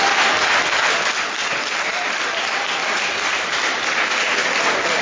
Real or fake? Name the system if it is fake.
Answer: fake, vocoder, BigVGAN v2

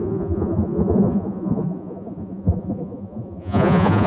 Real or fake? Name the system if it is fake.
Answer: fake, vocoder, Vocos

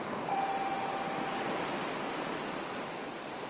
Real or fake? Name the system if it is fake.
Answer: real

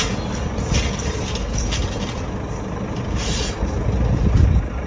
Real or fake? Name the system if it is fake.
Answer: real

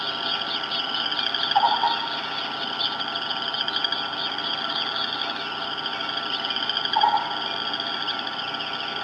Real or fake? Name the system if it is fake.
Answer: real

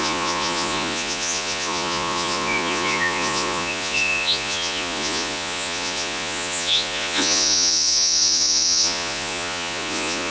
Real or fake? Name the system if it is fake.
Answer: fake, vocoder, Vocos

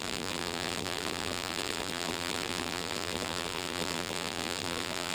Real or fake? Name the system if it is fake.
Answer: fake, vocoder, BigVGAN v2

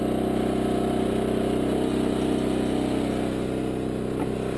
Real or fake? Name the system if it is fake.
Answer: real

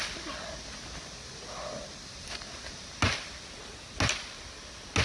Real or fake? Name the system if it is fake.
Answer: real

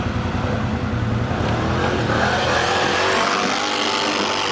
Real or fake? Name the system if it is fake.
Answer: real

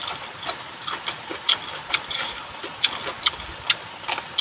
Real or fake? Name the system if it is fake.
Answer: real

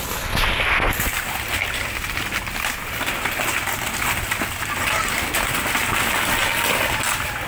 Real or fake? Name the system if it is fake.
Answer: real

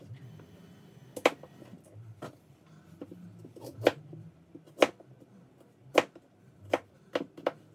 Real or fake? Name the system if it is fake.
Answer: real